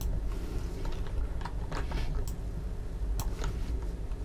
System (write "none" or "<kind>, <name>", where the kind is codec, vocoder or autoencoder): none